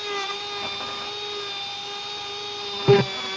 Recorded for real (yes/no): yes